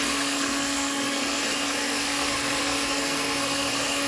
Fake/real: fake